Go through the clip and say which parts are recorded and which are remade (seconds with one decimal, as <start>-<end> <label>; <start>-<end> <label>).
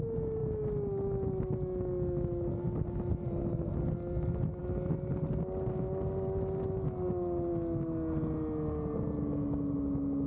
0.0-10.3 recorded